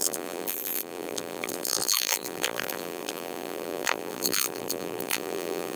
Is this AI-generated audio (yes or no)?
yes